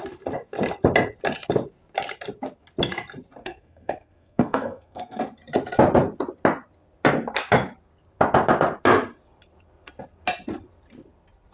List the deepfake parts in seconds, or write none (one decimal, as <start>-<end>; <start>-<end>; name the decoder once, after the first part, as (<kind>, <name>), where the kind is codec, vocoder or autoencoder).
3.4-5.2 (codec, SNAC)